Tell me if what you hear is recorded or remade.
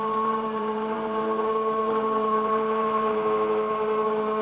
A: remade